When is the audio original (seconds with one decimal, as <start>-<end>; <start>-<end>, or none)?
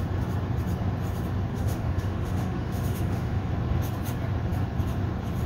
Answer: 0.0-1.5; 3.5-5.5